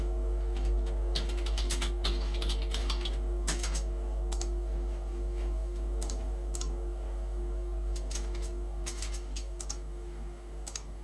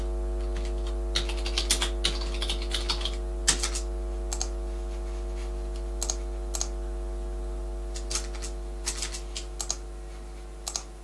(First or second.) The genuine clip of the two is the second